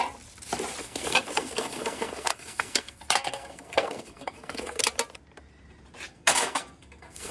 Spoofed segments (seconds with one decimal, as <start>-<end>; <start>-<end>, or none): 0.8-4.8; 6.1-7.3